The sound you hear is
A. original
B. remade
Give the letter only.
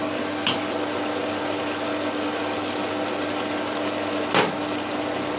A